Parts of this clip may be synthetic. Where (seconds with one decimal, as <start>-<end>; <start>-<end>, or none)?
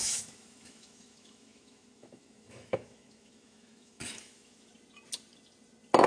0.0-4.7